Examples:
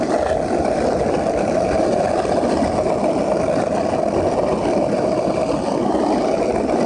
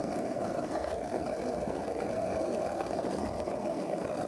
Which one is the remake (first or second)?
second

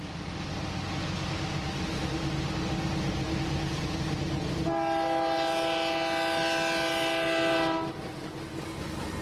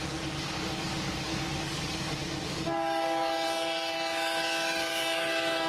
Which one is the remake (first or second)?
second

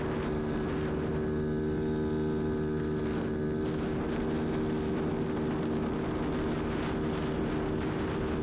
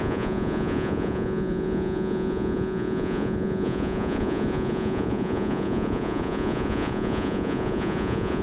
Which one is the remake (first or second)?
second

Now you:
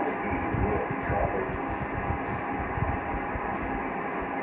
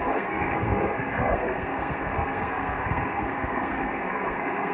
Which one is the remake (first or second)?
second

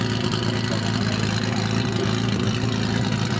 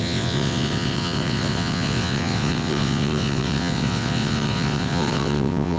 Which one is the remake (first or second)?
second